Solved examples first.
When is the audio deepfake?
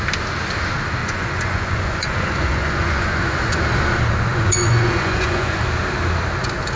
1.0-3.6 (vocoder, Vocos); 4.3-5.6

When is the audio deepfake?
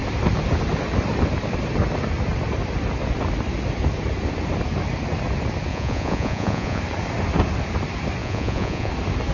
5.7-6.8 (vocoder, Vocos); 8.2-8.9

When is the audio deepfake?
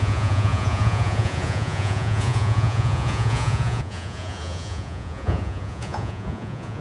0.0-6.8 (vocoder, Vocos)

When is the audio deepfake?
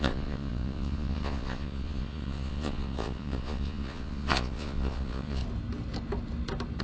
0.0-5.4 (vocoder, Vocos)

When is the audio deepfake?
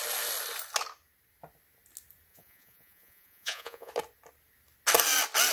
2.3-3.9 (vocoder, Vocos)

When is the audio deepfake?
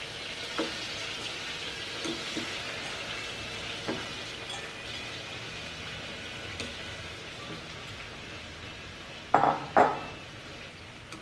none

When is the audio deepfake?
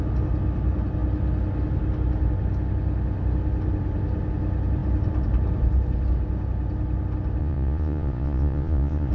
7.4-9.1 (vocoder, Vocos)